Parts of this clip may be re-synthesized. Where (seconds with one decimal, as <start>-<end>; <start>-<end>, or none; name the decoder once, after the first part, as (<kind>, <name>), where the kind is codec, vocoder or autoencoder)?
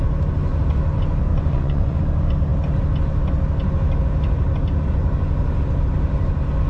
1.3-2.0 (vocoder, Vocos)